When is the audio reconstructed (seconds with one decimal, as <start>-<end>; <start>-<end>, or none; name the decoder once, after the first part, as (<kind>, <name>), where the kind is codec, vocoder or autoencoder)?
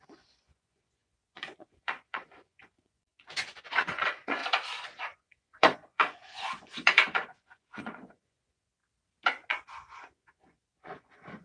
0.0-4.4 (vocoder, Vocos); 5.0-8.8; 9.5-11.4